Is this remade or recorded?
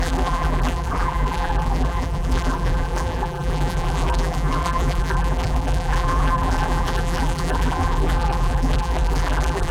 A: remade